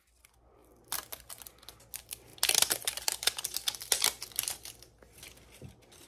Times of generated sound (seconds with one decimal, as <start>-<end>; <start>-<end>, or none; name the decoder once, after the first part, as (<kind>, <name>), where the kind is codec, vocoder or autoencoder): none